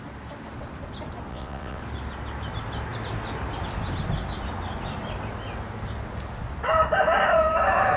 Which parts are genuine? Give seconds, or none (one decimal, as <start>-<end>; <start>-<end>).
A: 0.0-1.3; 1.8-8.0